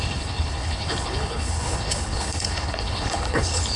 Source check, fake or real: fake